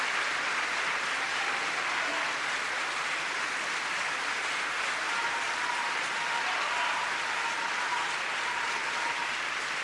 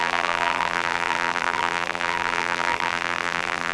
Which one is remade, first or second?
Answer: second